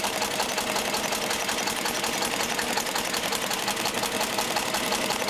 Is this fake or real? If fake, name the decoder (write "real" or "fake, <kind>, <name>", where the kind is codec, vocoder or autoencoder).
real